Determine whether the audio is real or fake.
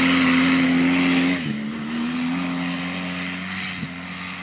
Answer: real